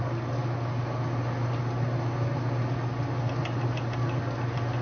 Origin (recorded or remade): recorded